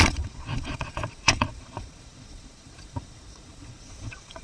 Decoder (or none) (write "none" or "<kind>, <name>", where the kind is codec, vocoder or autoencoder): vocoder, Vocos